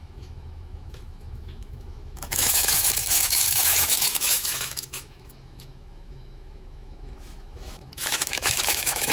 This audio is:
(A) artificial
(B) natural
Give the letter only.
A